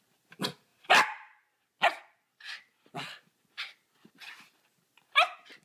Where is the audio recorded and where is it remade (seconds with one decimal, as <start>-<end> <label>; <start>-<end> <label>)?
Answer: 0.0-5.6 recorded